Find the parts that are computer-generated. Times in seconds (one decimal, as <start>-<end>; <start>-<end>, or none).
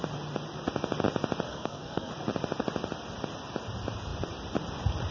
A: 1.5-2.1